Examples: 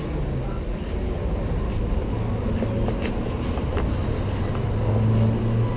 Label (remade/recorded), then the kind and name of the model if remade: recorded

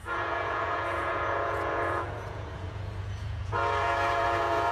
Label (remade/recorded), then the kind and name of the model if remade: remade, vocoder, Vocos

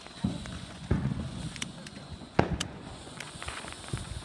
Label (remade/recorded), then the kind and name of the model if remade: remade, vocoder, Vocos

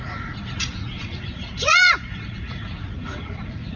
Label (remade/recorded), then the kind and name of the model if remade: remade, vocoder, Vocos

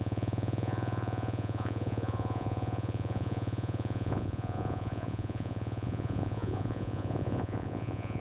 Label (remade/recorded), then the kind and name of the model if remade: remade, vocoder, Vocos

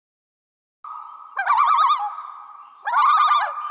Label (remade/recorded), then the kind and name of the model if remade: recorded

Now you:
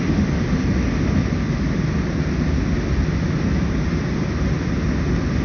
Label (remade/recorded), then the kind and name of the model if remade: recorded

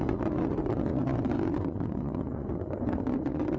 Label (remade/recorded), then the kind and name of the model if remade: remade, vocoder, Vocos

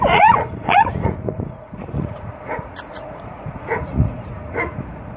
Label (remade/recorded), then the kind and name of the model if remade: remade, vocoder, Vocos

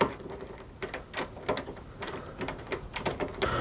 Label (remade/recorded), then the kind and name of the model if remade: recorded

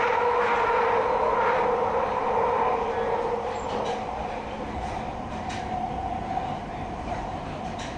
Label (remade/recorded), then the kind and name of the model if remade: recorded